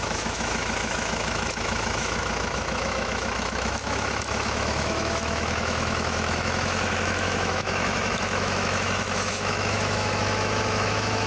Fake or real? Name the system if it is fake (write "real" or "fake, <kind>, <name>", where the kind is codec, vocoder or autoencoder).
fake, autoencoder, DAC-VAE